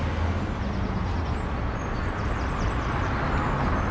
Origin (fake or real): real